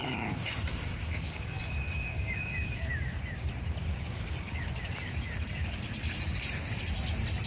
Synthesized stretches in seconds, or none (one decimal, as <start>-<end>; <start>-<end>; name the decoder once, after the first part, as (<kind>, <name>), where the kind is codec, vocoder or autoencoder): 0.0-2.9 (codec, DAC); 3.9-4.7